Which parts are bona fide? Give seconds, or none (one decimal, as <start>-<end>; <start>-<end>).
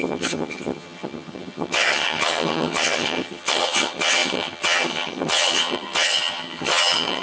none